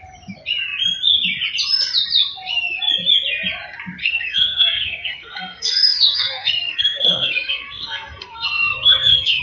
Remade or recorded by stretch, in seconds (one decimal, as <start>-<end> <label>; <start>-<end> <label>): 0.0-4.0 recorded; 4.0-9.4 remade